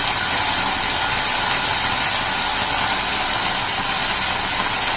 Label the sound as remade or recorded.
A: recorded